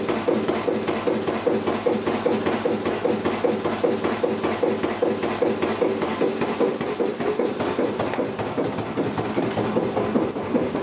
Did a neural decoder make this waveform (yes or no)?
no